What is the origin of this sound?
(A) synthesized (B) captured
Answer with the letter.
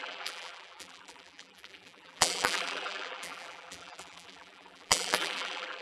A